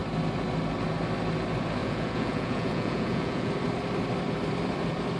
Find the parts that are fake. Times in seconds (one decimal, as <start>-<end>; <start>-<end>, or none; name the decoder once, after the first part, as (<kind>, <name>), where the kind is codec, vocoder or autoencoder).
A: 1.8-3.5 (vocoder, Vocos)